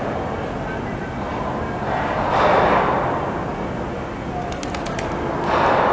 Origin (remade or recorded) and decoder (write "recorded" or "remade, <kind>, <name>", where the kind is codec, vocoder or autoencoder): recorded